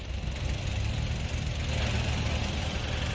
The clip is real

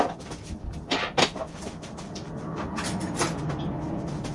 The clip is fake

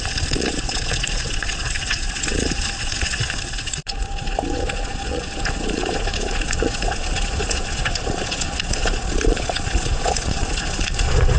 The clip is fake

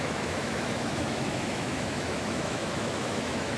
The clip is fake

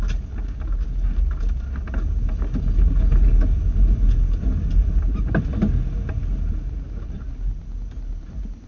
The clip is real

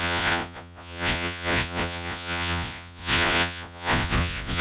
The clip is fake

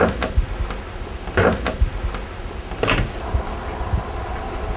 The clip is real